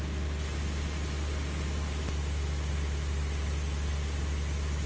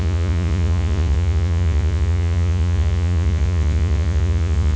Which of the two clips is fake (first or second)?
second